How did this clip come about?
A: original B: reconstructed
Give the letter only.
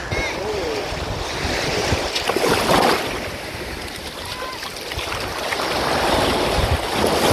A